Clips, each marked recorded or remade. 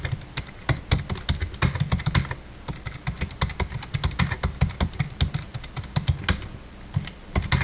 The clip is recorded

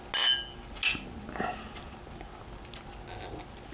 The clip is recorded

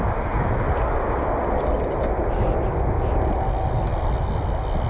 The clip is recorded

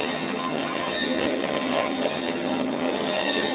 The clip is remade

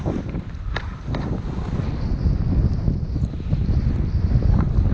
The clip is recorded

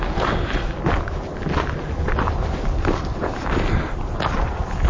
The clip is recorded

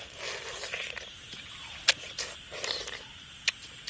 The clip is recorded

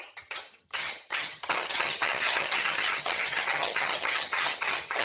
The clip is remade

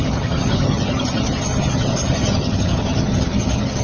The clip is remade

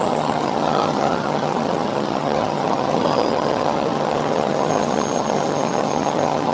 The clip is remade